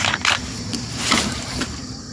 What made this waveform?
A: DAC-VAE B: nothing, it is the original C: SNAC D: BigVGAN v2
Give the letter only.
D